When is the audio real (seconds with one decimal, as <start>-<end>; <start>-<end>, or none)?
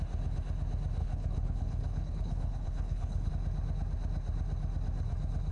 0.0-1.0; 3.3-5.5